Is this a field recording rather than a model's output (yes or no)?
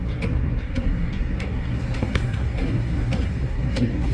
no